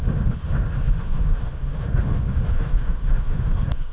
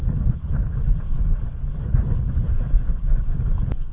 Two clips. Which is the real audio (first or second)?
second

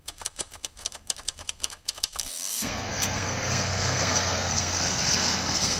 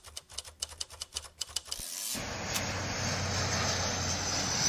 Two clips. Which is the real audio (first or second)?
second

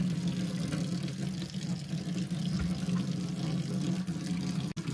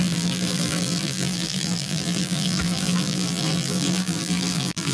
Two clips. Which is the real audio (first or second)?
first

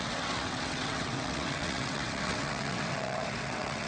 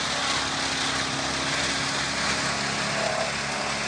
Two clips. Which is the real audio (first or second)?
second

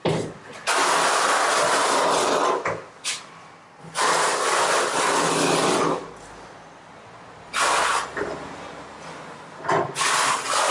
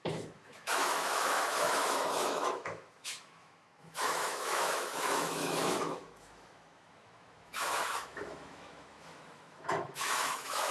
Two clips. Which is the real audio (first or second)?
first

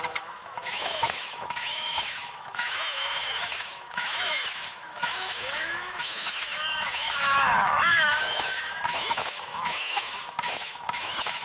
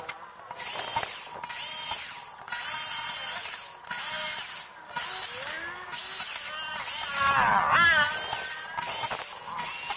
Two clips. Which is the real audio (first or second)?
second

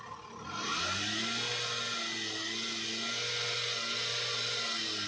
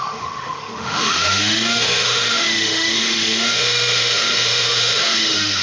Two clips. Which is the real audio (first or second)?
first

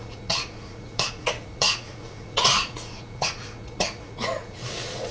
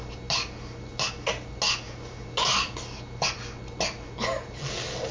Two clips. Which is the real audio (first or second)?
second